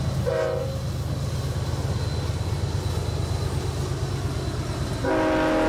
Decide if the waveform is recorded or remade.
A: recorded